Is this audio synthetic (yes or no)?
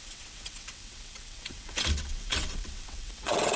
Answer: yes